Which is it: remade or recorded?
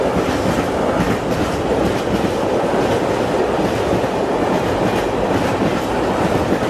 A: recorded